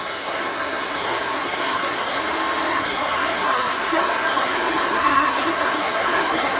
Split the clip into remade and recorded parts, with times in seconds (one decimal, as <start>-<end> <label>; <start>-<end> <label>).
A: 0.0-2.2 remade; 2.2-2.7 recorded; 2.7-6.6 remade